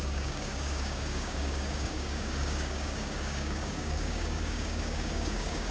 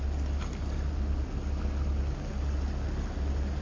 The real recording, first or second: second